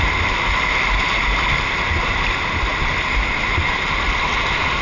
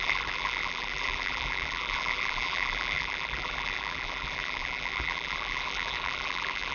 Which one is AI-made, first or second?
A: second